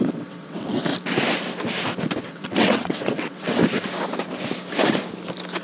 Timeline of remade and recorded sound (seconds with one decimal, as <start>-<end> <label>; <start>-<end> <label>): 0.0-0.9 remade; 0.9-2.2 recorded; 2.2-3.6 remade; 3.6-5.6 recorded